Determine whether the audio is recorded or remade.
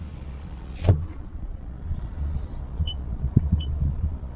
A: remade